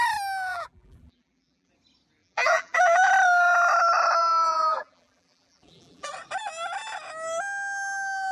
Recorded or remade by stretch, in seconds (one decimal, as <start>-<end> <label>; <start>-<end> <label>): 0.0-0.5 recorded; 0.5-1.7 remade; 1.7-2.2 recorded; 2.2-3.1 remade; 3.1-4.2 recorded; 4.2-6.1 remade; 6.1-8.3 recorded

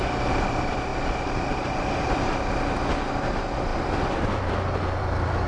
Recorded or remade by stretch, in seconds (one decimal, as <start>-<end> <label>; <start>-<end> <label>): 0.0-0.9 recorded; 0.9-2.5 remade; 2.5-5.5 recorded